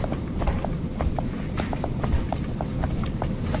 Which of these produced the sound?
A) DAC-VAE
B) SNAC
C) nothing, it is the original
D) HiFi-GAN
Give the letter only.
C